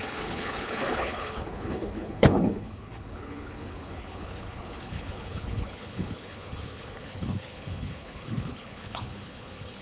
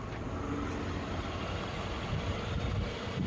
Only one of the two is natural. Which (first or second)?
second